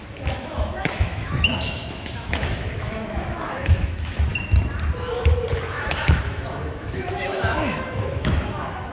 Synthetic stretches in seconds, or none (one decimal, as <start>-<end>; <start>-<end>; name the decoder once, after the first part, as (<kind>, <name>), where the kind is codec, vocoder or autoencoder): 0.0-4.3 (autoencoder, DAC-VAE); 5.6-8.9

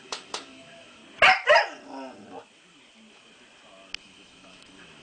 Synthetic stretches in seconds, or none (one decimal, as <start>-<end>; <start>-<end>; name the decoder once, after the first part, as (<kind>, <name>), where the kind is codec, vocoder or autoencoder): 0.0-1.0 (autoencoder, DAC-VAE); 4.0-5.0

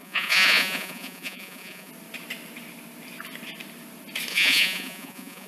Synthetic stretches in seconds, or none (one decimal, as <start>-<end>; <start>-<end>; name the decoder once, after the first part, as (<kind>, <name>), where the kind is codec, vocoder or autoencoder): 0.0-1.9 (vocoder, Vocos); 4.3-5.5